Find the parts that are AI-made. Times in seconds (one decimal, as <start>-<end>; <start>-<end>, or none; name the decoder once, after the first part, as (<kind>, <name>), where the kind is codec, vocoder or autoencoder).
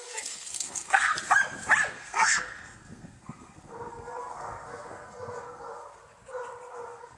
0.0-1.1 (codec, SNAC); 1.9-6.0; 6.7-7.2